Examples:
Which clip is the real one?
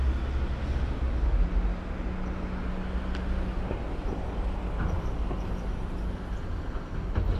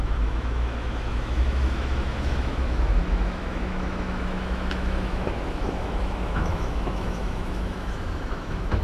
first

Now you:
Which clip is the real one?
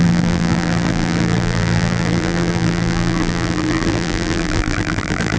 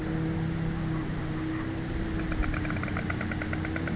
second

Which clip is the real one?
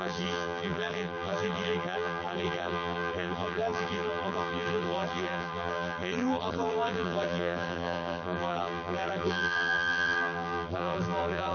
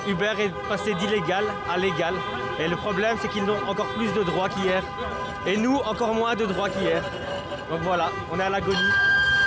second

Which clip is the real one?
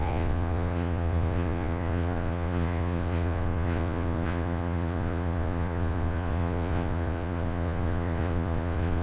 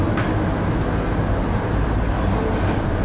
second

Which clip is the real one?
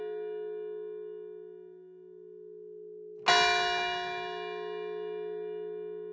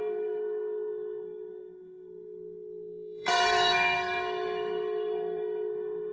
first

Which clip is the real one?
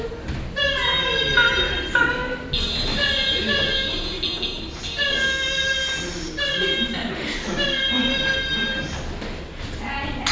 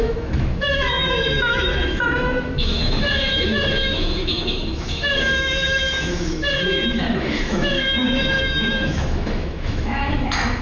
first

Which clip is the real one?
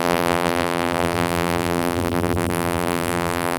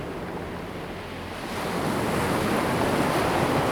second